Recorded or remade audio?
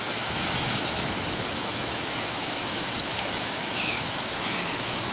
remade